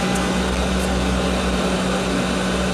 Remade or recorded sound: recorded